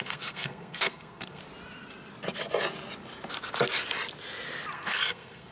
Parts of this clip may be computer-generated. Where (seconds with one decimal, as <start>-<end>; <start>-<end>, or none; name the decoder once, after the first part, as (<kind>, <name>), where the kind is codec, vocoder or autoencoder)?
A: 0.0-1.4 (codec, SNAC); 4.7-5.5